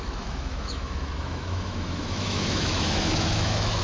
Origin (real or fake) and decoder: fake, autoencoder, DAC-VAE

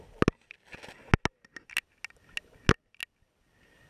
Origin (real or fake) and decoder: real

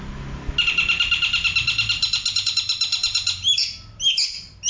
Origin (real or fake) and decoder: real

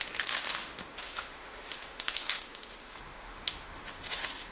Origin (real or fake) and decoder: fake, autoencoder, DAC-VAE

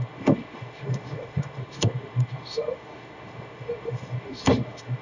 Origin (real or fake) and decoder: fake, autoencoder, DAC-VAE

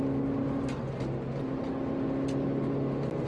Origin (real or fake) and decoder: real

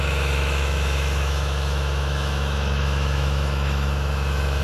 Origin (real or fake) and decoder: fake, autoencoder, DAC-VAE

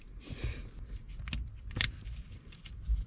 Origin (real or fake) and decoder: real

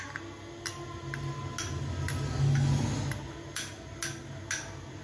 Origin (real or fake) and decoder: real